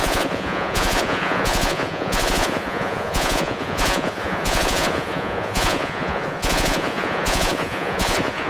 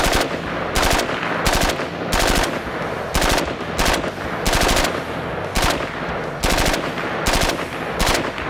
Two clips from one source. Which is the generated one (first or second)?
first